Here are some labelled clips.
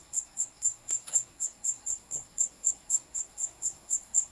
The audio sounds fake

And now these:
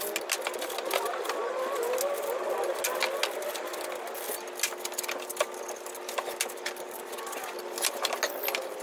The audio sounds real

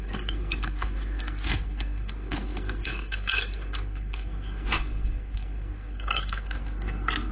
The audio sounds fake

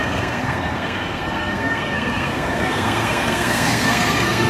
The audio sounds fake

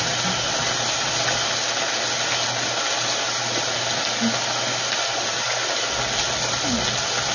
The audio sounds real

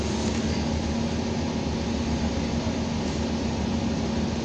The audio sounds real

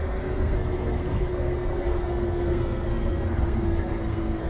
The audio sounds fake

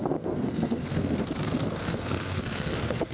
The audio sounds fake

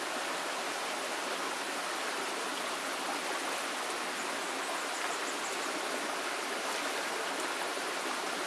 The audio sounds real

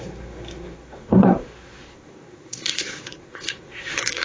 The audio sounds fake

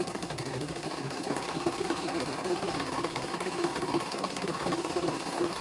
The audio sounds fake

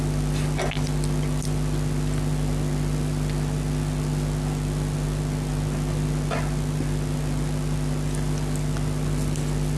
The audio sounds real